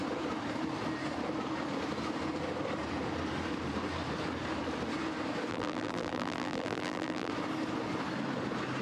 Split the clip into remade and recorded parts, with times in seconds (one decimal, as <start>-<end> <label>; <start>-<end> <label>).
0.0-5.5 recorded; 5.5-7.3 remade; 7.3-8.8 recorded